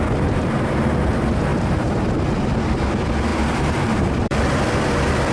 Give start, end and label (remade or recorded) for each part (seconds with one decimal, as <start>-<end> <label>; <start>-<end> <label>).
0.0-1.5 recorded; 1.5-2.1 remade; 2.1-3.3 recorded; 3.3-4.4 remade; 4.4-5.3 recorded